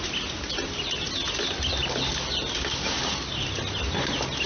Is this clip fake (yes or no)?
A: no